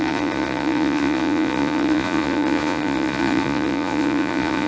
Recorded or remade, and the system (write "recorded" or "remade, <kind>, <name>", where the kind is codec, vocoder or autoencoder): remade, vocoder, Vocos